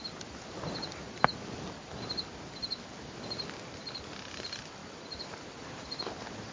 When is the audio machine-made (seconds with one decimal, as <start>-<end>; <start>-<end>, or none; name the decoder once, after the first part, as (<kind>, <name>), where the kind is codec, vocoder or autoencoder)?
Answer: none